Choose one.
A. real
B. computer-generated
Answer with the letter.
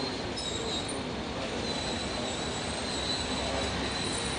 A